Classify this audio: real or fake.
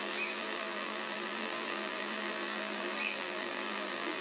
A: fake